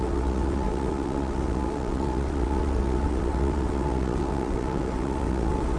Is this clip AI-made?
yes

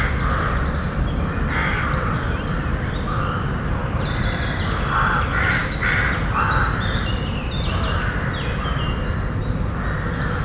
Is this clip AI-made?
no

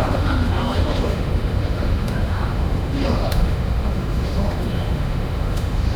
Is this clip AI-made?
yes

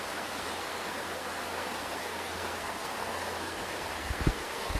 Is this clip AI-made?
yes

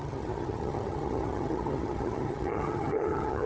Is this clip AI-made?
yes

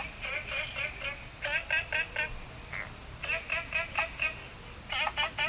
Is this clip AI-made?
no